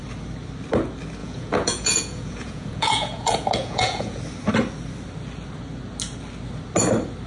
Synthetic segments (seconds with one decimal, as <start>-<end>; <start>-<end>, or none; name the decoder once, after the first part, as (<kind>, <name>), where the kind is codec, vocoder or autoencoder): 1.2-4.2 (vocoder, Vocos)